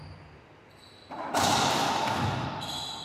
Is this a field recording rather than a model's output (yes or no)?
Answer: yes